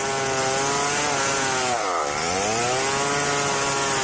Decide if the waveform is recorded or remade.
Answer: recorded